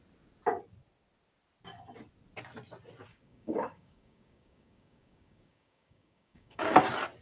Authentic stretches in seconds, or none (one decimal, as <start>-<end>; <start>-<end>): 0.0-3.1; 6.8-7.2